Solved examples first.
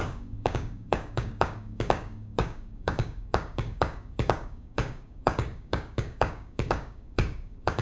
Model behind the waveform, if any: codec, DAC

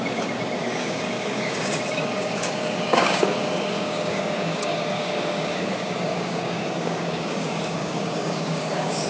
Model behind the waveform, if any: codec, DAC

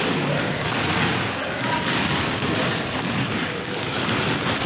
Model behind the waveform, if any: codec, DAC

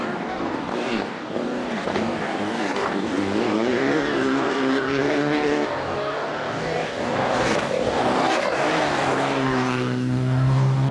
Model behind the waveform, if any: codec, DAC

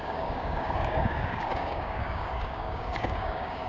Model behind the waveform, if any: codec, DAC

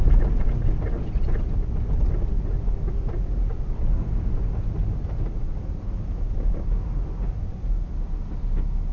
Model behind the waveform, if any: none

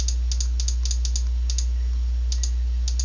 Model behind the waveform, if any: none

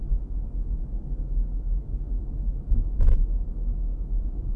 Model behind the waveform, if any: codec, DAC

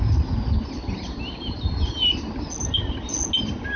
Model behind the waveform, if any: none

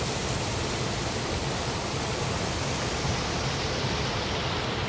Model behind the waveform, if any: none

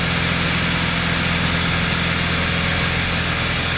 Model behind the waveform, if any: none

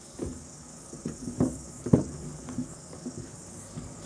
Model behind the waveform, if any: codec, DAC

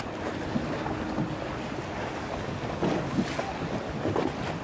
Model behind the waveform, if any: none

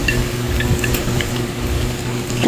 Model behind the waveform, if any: codec, DAC